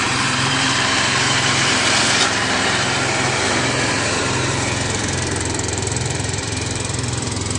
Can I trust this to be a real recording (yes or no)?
no